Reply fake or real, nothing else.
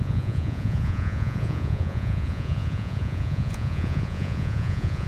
fake